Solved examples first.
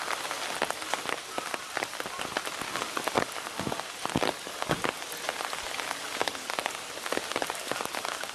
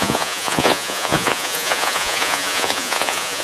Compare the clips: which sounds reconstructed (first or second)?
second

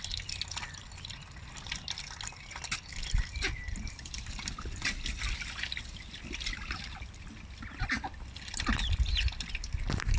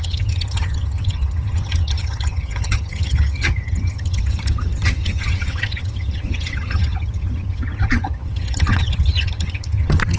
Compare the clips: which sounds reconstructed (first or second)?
second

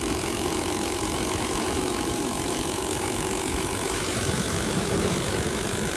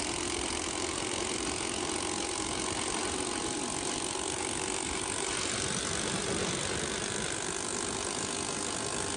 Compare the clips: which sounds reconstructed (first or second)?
first